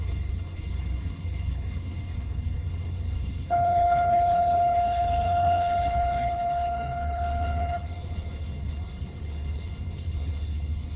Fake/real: fake